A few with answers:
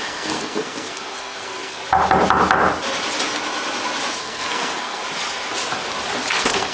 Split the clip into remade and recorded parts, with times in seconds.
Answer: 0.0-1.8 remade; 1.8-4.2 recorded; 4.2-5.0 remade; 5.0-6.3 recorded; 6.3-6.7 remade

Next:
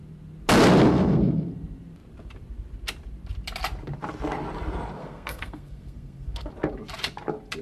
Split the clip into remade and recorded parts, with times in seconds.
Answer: 0.0-0.9 recorded; 0.9-1.5 remade; 1.5-5.0 recorded; 5.0-6.5 remade; 6.5-7.6 recorded

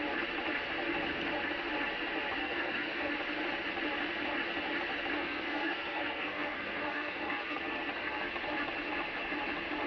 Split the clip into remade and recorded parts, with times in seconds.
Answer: 0.0-2.4 recorded; 2.4-3.1 remade; 3.1-5.2 recorded; 5.2-8.3 remade; 8.3-9.9 recorded

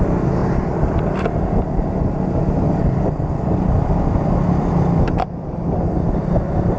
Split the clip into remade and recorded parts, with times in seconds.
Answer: 0.0-6.8 recorded

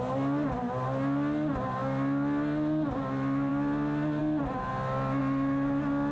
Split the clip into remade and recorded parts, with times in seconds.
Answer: 0.0-6.1 recorded

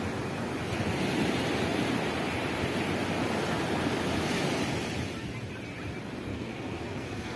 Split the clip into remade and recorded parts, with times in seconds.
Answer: 0.0-6.3 recorded; 6.3-7.4 remade